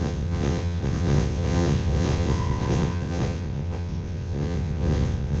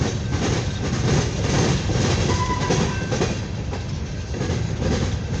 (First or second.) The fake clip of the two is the first